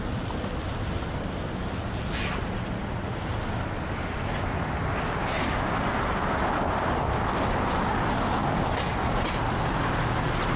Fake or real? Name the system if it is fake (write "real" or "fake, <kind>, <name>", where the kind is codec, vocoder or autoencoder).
real